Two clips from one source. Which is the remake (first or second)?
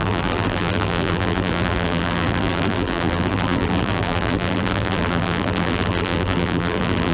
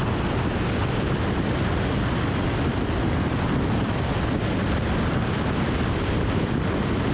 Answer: first